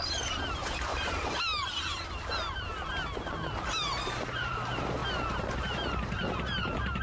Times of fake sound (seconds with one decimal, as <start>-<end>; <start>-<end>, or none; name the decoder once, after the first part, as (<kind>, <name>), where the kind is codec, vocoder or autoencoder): 0.0-2.7 (vocoder, BigVGAN v2); 3.7-5.0; 5.6-7.0